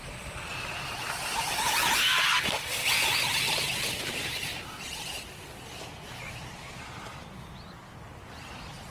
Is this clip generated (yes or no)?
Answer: no